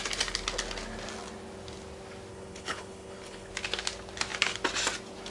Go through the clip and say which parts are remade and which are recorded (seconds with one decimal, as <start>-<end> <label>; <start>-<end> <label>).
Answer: 0.0-2.3 recorded; 2.3-3.5 remade; 3.5-5.3 recorded